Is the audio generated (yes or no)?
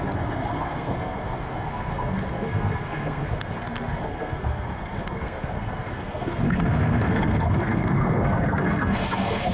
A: yes